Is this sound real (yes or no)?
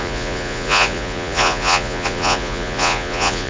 no